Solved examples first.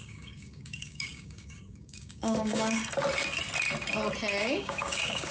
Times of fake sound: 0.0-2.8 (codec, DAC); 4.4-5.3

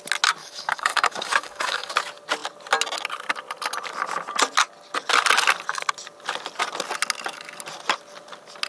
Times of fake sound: 0.4-1.9 (codec, DAC)

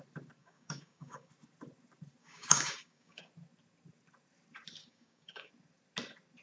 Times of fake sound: 0.4-1.3 (codec, DAC); 2.2-3.3; 4.8-5.5

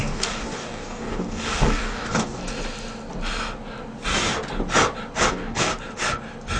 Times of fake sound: 0.0-2.4 (codec, DAC); 5.3-5.7

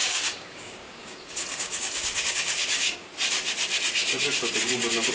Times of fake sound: 0.0-3.1 (codec, DAC)

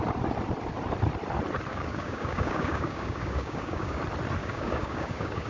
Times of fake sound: 1.7-4.0 (codec, DAC); 4.4-5.5

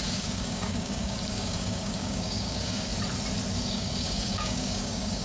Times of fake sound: 0.0-2.9 (codec, DAC); 3.7-5.2

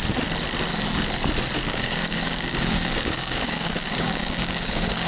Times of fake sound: 1.7-5.1 (codec, DAC)